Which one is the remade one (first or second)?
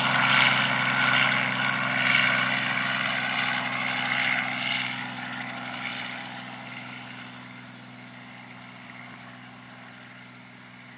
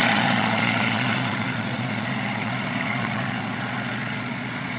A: second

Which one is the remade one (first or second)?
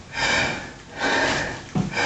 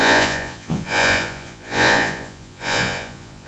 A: second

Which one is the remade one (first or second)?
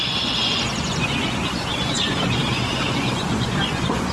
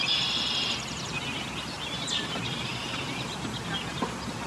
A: first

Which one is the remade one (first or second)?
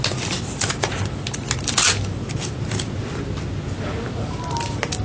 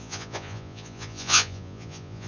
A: second